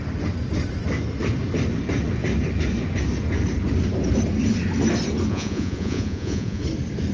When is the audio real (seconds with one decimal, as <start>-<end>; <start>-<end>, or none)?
0.0-5.3; 6.6-7.1